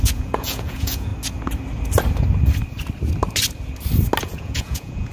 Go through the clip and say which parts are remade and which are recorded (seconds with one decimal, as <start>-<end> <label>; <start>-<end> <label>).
0.0-1.1 remade; 1.1-4.2 recorded; 4.2-5.1 remade